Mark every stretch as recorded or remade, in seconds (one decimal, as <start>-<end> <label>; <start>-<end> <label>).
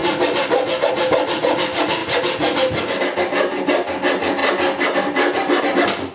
0.0-6.1 recorded